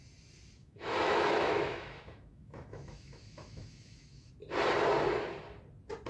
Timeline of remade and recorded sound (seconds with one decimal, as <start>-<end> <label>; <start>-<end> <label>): 0.0-0.6 recorded; 0.6-4.3 remade; 4.3-6.1 recorded